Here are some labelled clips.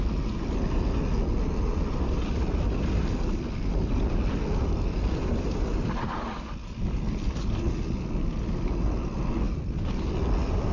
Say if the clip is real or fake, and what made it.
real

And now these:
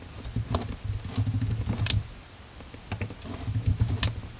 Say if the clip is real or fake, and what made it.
real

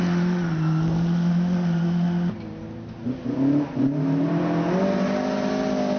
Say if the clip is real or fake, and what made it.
real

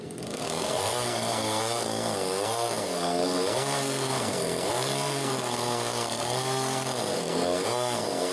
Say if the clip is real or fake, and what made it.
fake, codec, SNAC